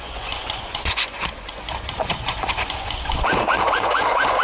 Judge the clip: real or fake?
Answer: fake